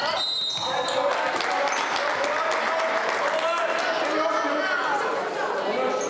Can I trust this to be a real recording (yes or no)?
yes